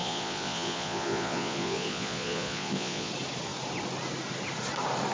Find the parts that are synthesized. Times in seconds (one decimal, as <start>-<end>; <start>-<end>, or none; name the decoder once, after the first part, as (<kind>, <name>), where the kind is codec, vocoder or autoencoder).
0.0-3.1 (vocoder, Vocos)